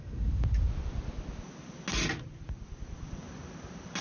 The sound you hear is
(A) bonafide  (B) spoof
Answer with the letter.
A